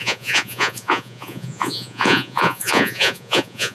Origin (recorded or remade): remade